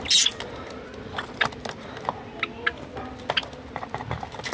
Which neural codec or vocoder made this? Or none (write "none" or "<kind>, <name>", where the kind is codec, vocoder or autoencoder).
none